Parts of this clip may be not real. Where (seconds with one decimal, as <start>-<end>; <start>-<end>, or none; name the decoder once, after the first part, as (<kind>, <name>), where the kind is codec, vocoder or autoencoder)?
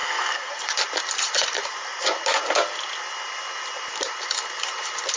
0.0-0.6 (codec, SNAC)